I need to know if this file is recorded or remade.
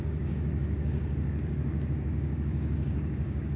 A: remade